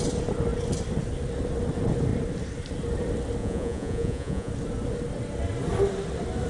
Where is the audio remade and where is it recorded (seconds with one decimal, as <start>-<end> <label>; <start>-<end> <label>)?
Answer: 0.0-3.4 recorded; 3.4-4.5 remade; 4.5-6.5 recorded